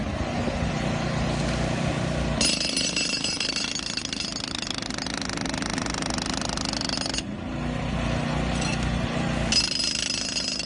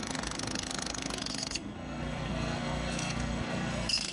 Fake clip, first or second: second